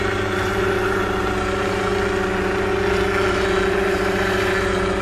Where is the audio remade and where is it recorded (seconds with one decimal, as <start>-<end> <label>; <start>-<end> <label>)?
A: 0.0-1.9 remade; 1.9-3.3 recorded; 3.3-5.0 remade